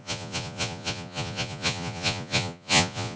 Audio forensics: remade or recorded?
remade